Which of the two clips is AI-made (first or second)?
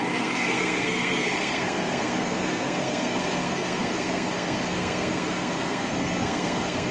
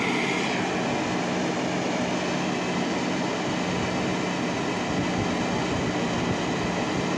first